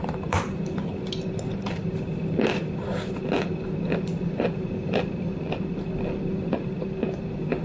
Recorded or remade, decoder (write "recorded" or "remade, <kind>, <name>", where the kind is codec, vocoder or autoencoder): recorded